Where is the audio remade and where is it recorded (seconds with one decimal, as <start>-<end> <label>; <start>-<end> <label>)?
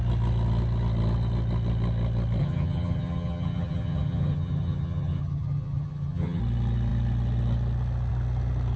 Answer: 0.0-2.4 recorded; 2.4-6.4 remade; 6.4-8.8 recorded